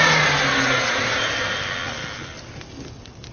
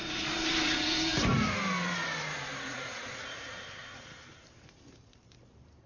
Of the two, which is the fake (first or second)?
second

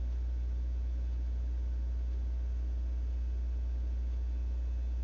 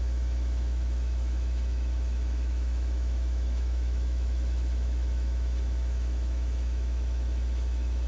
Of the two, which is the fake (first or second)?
second